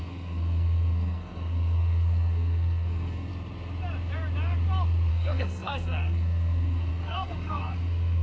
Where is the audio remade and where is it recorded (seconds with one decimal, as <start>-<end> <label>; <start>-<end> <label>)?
0.0-3.3 remade; 3.3-5.1 recorded; 5.1-8.2 remade